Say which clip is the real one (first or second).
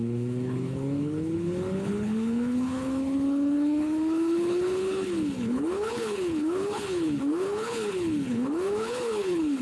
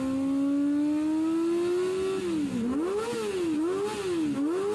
second